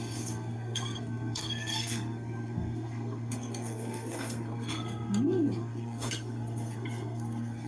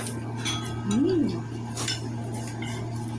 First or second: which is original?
second